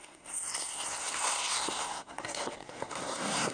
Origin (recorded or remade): remade